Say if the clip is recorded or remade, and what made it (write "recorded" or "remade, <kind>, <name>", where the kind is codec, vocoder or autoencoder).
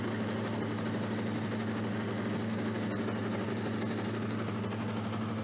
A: recorded